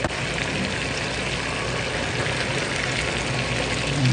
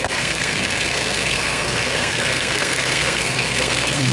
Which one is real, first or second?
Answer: first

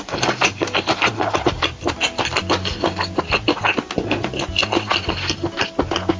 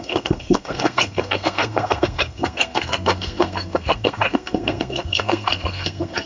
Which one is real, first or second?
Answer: first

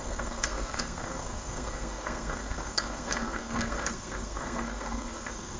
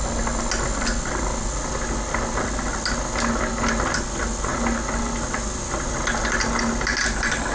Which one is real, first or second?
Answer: second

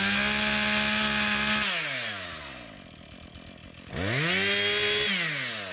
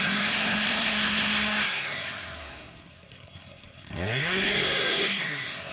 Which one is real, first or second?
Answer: first